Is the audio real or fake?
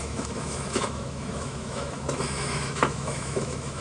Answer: fake